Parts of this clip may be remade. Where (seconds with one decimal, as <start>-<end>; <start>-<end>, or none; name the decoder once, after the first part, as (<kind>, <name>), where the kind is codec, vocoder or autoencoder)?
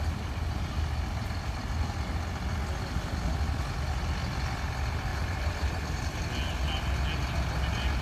5.1-6.0 (vocoder, BigVGAN v2)